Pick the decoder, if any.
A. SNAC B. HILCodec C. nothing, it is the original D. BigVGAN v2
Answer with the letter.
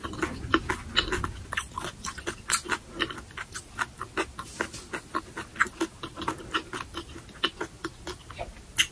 C